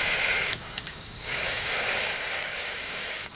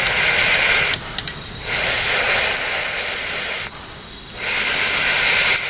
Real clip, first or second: second